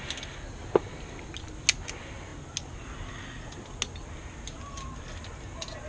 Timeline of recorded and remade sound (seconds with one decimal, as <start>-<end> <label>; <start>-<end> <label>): 0.0-5.9 recorded